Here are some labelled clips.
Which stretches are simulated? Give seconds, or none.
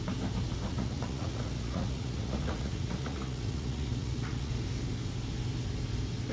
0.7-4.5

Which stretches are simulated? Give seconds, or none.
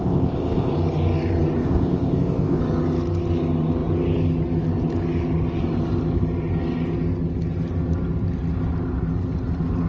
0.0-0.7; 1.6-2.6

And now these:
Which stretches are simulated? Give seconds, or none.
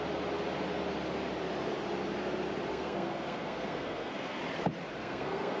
2.7-4.4; 5.0-5.6